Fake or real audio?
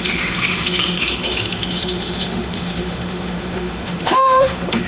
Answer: fake